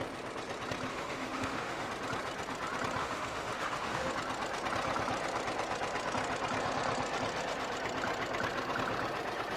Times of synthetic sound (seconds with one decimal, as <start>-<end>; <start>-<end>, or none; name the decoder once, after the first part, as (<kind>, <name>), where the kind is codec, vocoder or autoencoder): 0.9-1.9 (autoencoder, DAC-VAE); 3.0-4.1